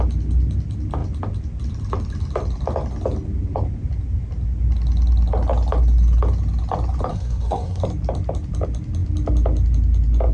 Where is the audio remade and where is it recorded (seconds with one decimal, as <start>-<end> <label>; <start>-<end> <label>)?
0.0-7.1 recorded; 7.1-7.8 remade; 7.8-10.3 recorded